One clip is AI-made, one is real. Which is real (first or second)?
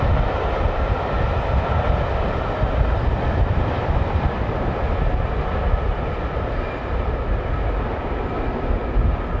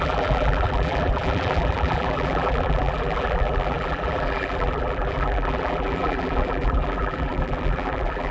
first